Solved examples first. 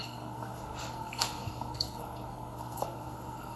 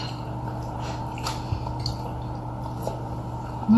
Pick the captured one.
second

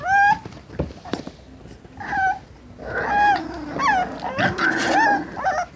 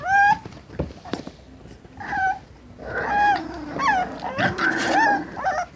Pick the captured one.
first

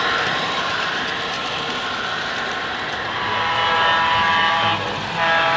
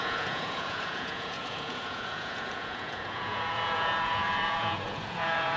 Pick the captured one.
first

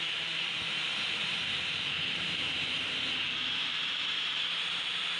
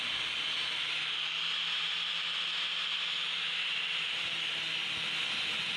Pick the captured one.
second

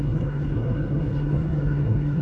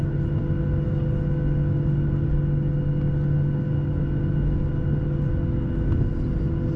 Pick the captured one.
second